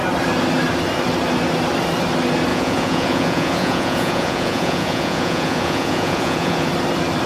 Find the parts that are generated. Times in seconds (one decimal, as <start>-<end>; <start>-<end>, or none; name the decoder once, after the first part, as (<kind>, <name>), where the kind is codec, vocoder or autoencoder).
2.5-6.7 (vocoder, Vocos)